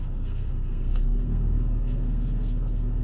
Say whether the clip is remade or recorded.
remade